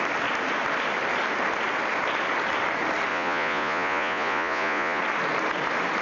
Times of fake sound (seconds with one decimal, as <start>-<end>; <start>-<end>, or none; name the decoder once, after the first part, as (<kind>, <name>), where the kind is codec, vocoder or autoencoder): 3.1-5.0 (vocoder, Vocos)